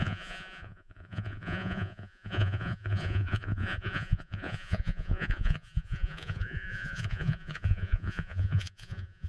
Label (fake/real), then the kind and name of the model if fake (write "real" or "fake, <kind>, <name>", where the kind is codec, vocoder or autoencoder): fake, vocoder, Vocos